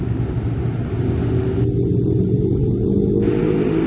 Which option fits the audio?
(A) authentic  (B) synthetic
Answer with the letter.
A